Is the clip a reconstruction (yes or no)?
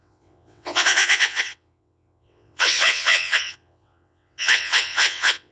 yes